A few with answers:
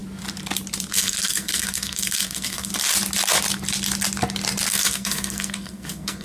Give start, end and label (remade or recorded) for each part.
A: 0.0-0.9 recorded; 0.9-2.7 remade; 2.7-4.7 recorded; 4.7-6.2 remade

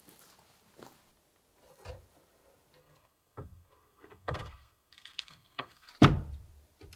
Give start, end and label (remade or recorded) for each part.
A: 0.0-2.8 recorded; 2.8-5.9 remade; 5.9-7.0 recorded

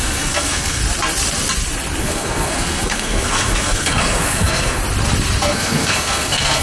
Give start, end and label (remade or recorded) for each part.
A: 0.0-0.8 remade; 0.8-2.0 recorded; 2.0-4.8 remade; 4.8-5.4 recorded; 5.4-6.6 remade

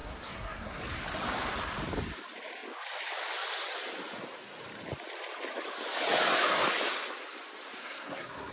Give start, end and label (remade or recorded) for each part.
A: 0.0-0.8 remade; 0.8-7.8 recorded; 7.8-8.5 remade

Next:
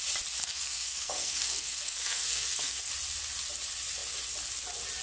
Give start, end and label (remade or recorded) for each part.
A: 0.0-0.4 recorded; 0.4-2.9 remade; 2.9-5.0 recorded

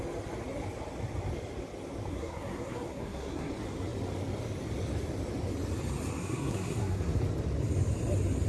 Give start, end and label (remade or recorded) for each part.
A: 0.0-2.1 recorded; 2.1-3.5 remade; 3.5-6.2 recorded; 6.2-7.2 remade; 7.2-8.5 recorded